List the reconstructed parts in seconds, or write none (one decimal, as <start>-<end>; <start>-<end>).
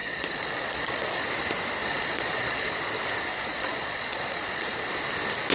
0.0-1.2; 1.8-2.7; 3.3-4.9